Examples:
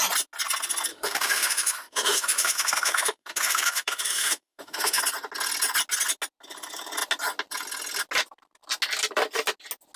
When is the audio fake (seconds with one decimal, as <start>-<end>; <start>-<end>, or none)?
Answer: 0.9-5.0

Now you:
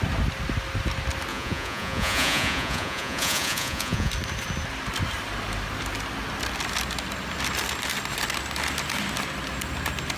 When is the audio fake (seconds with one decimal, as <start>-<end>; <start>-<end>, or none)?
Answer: 1.3-4.1

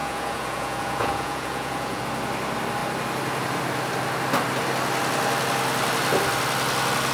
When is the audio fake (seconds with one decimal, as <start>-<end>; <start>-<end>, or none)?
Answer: 0.0-2.0

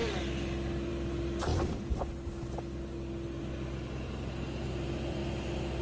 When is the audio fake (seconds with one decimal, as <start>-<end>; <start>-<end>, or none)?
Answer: none

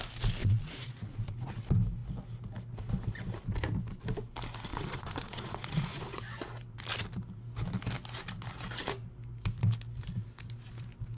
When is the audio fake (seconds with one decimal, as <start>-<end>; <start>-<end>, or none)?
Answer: 0.4-1.6; 4.7-6.2